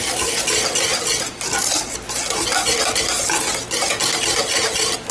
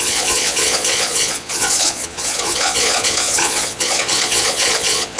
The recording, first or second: first